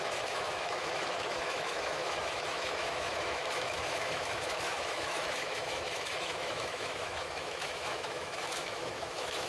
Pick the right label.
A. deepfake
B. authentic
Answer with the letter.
A